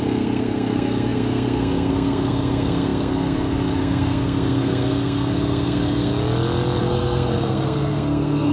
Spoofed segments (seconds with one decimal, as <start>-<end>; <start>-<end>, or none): 0.0-6.1; 6.8-8.5